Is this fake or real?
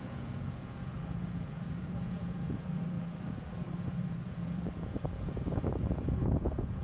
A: fake